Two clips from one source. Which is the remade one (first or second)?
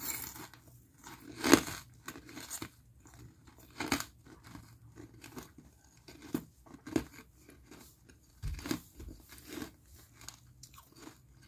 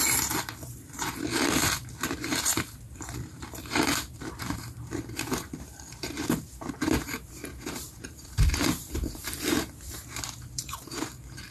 second